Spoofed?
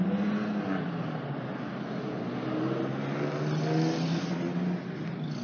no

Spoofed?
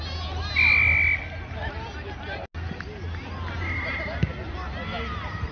no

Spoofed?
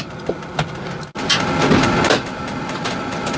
no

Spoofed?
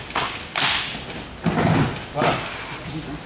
no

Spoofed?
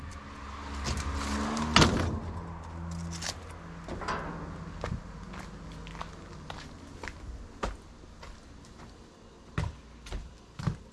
no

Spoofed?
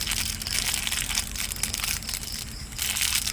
no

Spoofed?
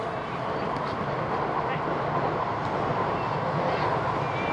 no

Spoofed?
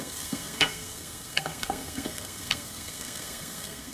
yes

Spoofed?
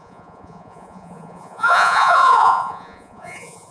yes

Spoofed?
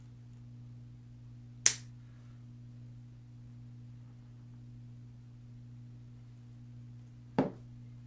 no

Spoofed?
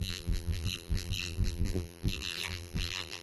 yes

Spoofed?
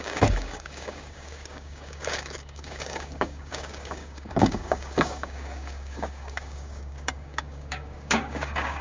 yes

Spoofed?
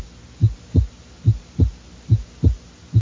no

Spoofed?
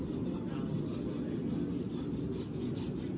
no